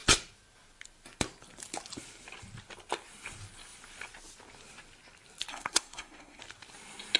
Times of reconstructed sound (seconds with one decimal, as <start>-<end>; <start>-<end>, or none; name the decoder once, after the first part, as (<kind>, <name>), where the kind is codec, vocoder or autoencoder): 5.5-6.4 (codec, SNAC)